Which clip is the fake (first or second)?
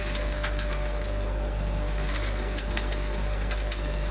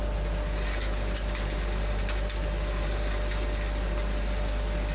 first